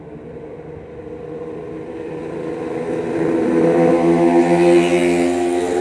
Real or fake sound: real